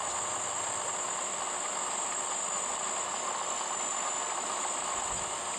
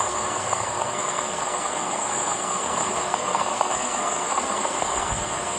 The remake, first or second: second